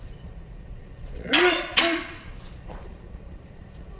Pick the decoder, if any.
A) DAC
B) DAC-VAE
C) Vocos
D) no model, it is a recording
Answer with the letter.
C